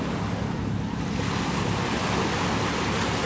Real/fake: real